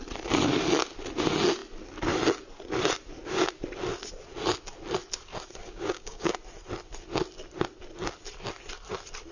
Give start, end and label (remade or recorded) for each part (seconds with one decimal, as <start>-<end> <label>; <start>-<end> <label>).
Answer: 0.0-5.6 recorded; 5.6-6.3 remade; 6.3-9.3 recorded